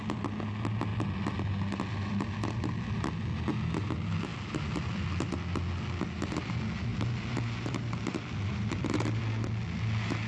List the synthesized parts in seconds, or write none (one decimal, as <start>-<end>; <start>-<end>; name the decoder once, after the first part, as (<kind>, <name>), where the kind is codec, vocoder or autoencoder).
0.9-2.2 (vocoder, BigVGAN v2); 6.9-9.2